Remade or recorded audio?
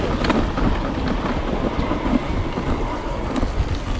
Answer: recorded